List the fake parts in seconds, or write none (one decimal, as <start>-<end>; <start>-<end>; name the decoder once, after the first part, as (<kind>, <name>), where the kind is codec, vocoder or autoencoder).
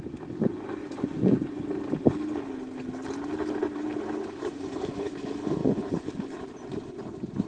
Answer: 0.8-1.7 (vocoder, Vocos); 4.5-5.1; 5.6-6.1